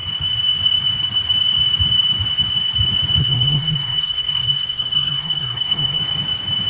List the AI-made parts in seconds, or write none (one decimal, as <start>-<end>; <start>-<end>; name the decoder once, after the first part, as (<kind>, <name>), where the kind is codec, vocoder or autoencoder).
3.2-6.0 (codec, SNAC)